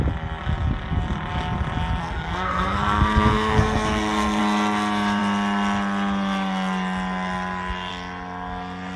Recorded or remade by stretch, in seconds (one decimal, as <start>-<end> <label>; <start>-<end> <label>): 0.0-2.0 recorded; 2.0-4.4 remade; 4.4-9.0 recorded